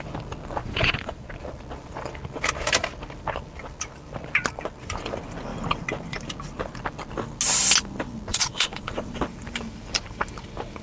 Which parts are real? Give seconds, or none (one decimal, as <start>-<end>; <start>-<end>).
0.0-0.6; 1.3-8.3; 9.2-10.8